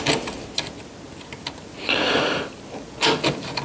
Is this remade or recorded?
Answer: recorded